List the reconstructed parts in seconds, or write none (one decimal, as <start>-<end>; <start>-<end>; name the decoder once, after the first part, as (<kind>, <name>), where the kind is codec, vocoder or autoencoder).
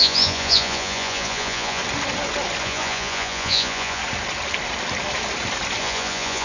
0.0-1.8 (vocoder, Vocos); 2.6-4.0; 5.8-6.4